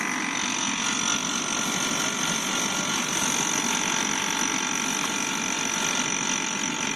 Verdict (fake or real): real